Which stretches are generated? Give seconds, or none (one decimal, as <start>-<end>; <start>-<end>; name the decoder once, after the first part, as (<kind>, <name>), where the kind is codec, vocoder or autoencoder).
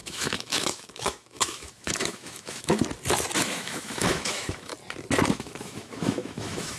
0.0-2.8 (autoencoder, DAC-VAE); 3.4-4.7; 5.3-6.8